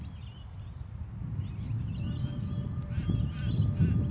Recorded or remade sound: recorded